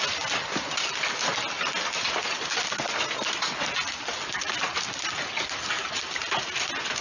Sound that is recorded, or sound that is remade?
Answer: recorded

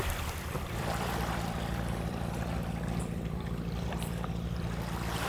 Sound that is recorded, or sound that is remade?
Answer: remade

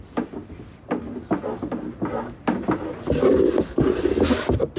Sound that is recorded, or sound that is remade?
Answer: recorded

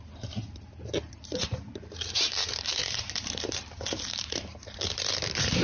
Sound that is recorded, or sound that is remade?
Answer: remade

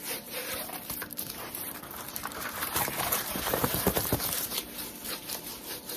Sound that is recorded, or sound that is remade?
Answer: remade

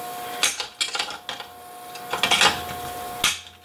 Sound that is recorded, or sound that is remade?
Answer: recorded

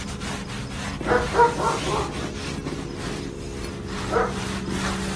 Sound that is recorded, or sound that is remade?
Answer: recorded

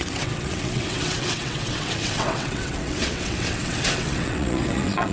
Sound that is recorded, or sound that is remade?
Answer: remade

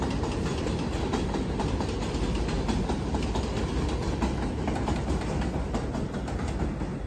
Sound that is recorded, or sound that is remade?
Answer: recorded